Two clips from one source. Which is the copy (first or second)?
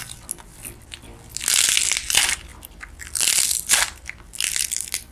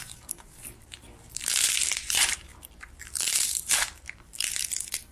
second